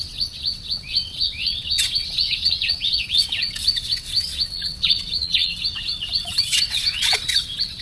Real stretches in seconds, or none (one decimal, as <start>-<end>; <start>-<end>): none